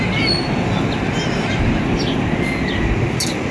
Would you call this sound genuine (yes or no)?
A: yes